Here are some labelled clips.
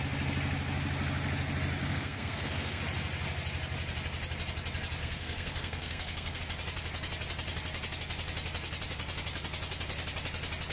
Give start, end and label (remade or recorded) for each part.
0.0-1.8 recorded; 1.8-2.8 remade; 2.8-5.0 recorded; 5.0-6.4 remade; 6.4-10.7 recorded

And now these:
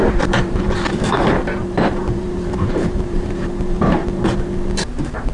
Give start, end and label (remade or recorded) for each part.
0.0-4.0 remade; 4.0-4.8 recorded; 4.8-5.3 remade

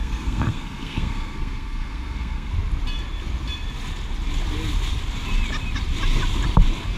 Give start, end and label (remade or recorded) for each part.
0.0-2.5 remade; 2.5-7.0 recorded

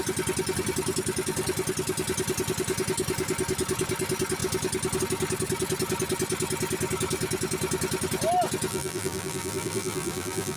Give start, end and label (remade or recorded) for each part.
0.0-8.7 recorded; 8.7-10.6 remade

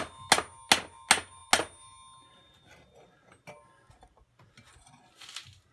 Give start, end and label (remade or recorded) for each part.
0.0-5.7 recorded